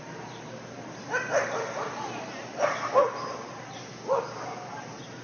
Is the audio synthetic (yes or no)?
no